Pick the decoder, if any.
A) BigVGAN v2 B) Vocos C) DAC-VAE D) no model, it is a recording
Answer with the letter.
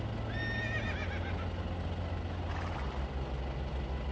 D